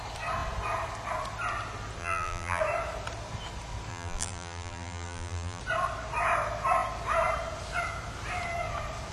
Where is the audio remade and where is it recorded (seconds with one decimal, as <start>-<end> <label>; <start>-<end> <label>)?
0.0-2.0 recorded; 2.0-2.6 remade; 2.6-3.9 recorded; 3.9-5.6 remade; 5.6-9.1 recorded